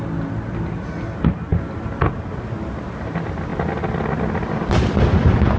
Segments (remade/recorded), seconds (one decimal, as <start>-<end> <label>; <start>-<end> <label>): 0.0-5.6 recorded